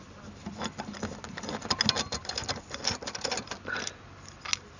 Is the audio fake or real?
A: real